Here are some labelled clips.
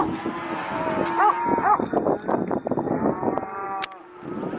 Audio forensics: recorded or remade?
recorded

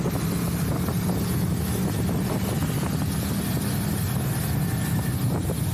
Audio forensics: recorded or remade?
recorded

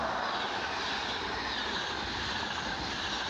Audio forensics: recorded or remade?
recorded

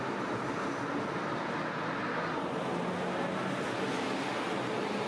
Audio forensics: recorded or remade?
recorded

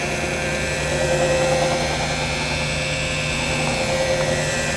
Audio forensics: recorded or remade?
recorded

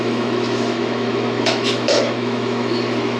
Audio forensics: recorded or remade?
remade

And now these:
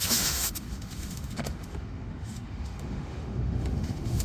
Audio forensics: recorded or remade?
remade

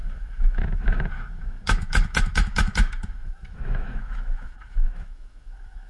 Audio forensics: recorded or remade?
remade